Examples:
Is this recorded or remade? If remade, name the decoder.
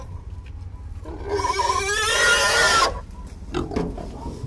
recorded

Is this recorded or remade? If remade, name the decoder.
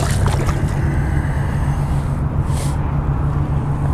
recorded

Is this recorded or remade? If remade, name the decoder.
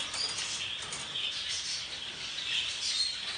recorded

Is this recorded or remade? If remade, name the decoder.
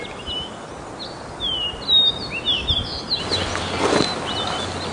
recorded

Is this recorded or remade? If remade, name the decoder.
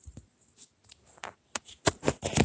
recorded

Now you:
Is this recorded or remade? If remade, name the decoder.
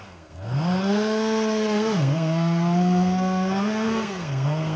remade, codec, SNAC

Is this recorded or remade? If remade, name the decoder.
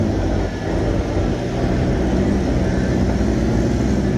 recorded